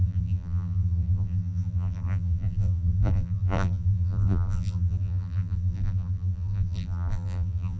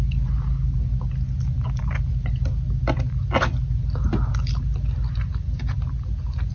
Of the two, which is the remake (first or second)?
first